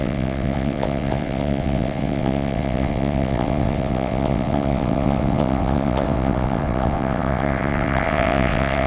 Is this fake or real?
fake